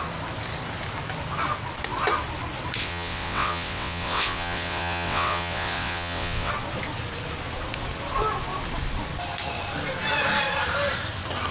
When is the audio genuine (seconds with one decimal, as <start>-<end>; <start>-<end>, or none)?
0.0-2.8; 6.5-11.5

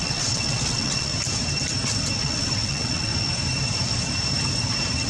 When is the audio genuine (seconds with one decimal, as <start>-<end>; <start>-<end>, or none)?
1.1-2.2; 3.1-5.1

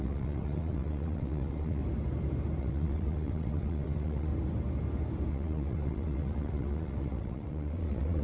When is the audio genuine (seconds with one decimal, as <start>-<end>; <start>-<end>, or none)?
1.8-2.6; 4.3-5.3

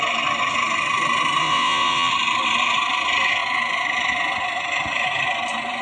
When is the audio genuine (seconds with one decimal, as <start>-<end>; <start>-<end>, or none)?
0.0-1.4; 2.1-5.8

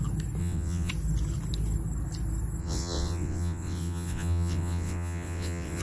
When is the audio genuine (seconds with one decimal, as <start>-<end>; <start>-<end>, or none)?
0.0-0.4; 0.9-2.6